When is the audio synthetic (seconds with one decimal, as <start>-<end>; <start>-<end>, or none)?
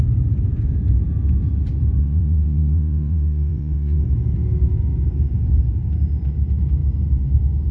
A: 2.0-4.0